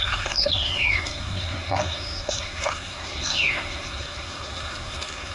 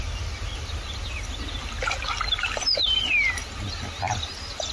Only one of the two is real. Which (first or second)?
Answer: second